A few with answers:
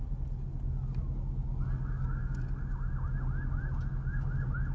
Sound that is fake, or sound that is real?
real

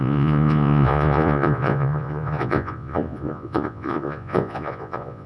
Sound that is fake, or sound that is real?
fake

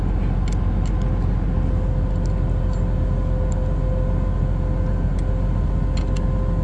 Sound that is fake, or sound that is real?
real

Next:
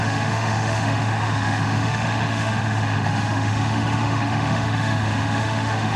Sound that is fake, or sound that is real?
fake